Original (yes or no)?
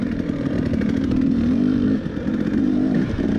no